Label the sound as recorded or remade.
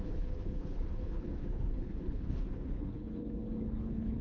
remade